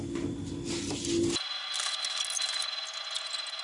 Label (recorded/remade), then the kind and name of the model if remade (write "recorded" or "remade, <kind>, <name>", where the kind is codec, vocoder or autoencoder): recorded